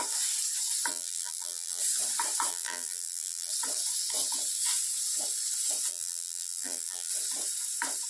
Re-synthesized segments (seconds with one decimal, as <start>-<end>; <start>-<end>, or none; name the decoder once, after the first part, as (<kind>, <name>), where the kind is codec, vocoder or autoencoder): 0.9-1.8 (vocoder, BigVGAN v2); 2.5-3.5; 5.9-7.1